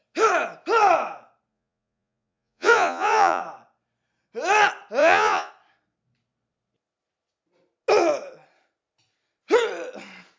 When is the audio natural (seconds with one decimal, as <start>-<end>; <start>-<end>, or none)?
0.0-1.5; 3.4-5.0; 5.5-10.4